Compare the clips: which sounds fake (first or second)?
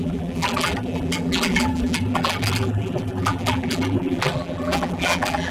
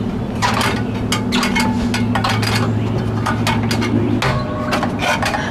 first